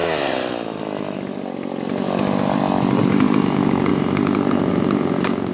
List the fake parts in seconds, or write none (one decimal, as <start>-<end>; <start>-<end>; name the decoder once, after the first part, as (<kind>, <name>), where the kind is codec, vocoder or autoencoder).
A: 3.1-5.5 (codec, DAC)